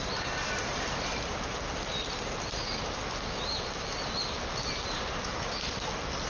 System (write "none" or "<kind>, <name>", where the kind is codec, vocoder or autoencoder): none